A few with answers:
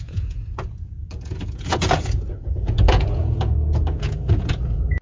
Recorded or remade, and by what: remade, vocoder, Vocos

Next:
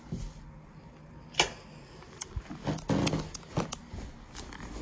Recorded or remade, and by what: recorded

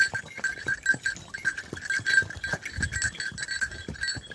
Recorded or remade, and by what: recorded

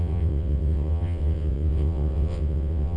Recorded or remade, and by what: remade, vocoder, WaveNeXt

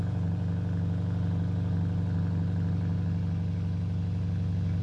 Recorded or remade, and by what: recorded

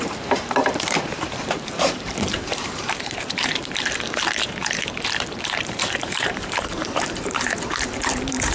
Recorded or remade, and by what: remade, vocoder, BigVGAN v2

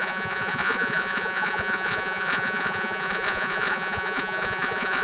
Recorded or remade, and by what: remade, vocoder, Vocos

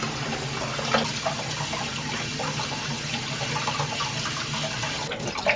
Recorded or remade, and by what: recorded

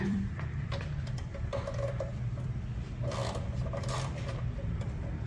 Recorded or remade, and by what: remade, vocoder, BigVGAN v2